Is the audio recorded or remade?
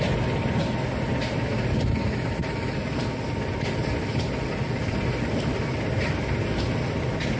recorded